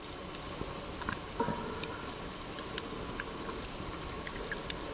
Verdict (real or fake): real